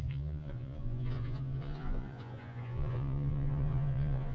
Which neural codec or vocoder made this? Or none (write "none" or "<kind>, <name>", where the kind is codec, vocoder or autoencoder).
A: vocoder, Vocos